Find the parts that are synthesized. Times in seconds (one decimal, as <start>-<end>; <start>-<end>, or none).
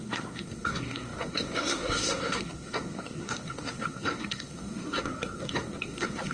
0.0-6.3